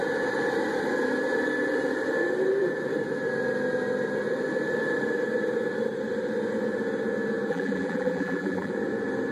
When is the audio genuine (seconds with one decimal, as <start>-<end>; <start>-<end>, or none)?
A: 0.0-7.5; 8.7-9.3